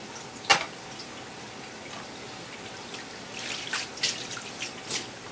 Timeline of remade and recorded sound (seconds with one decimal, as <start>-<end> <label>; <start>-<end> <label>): 0.0-0.5 recorded; 0.5-3.7 remade; 3.7-5.3 recorded